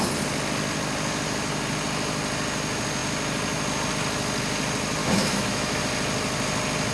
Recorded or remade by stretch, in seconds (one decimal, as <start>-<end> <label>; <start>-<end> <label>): 0.0-5.0 recorded; 5.0-5.8 remade; 5.8-6.9 recorded